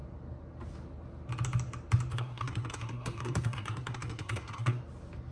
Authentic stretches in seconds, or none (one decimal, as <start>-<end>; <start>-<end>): 0.0-2.1; 4.8-5.3